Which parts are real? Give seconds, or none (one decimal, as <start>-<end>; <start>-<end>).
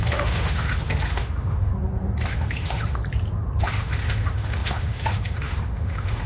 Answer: 1.7-2.3; 3.0-3.6